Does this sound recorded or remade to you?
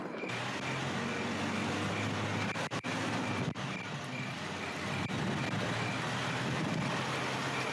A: recorded